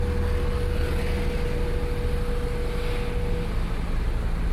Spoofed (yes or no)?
no